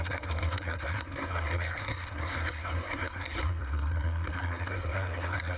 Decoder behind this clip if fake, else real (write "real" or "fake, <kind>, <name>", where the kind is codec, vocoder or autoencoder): fake, codec, SNAC